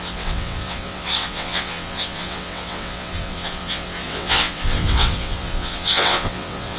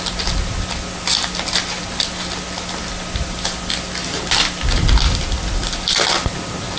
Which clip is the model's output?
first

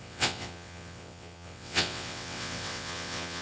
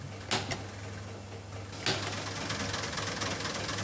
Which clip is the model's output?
first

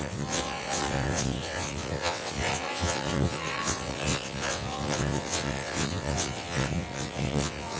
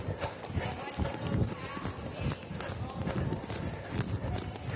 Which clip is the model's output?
first